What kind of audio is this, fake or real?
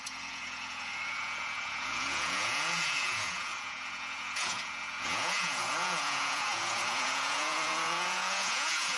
fake